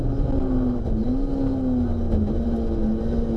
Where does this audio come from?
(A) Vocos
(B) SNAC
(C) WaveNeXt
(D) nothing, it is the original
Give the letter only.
D